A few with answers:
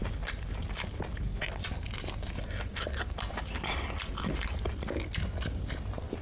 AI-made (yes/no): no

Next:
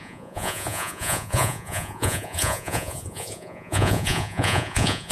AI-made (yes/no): yes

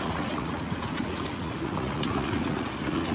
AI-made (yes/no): yes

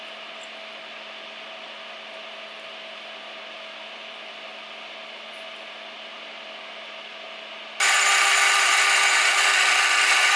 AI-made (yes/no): no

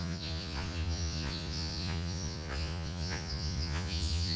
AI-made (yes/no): yes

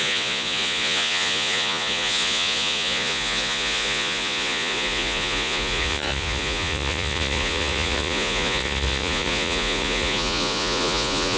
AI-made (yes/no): yes